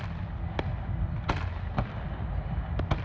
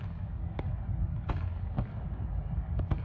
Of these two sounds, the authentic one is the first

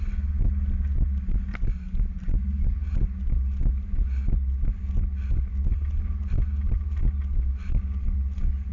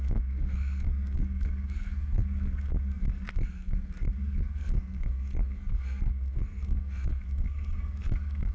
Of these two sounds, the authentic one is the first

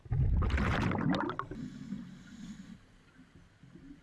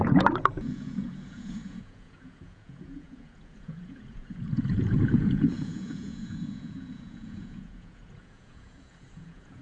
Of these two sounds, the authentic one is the first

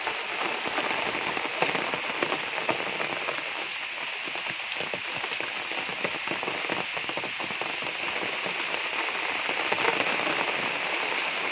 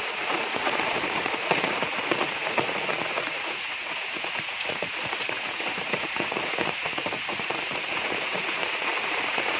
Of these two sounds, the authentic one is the first